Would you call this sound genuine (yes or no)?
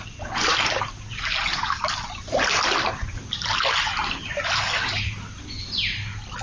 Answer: yes